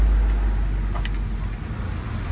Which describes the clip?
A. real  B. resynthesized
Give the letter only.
A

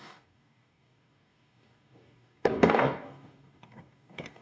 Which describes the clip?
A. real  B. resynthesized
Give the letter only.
B